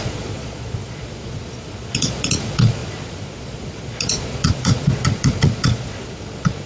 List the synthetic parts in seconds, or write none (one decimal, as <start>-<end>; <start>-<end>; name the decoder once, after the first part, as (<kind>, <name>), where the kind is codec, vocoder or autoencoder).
0.0-6.7 (vocoder, Vocos)